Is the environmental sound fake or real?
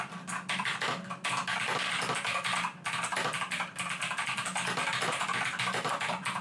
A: real